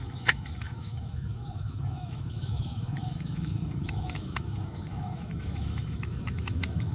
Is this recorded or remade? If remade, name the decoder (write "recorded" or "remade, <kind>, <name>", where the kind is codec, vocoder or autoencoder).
remade, autoencoder, DAC-VAE